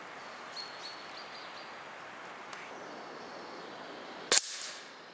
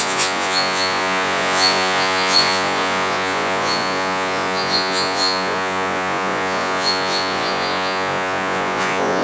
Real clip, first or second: first